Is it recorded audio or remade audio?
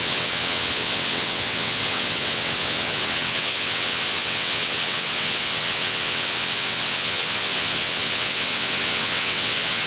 remade